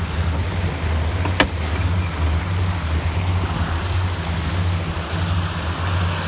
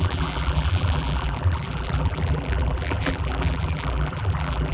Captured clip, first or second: first